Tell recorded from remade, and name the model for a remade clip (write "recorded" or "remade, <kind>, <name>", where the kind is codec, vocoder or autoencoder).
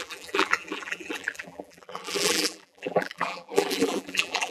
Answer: remade, vocoder, BigVGAN v2